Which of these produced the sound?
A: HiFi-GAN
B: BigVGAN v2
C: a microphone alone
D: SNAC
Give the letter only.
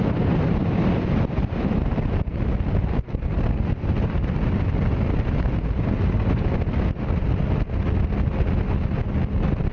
C